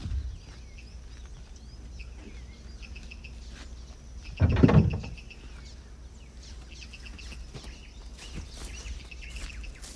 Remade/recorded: recorded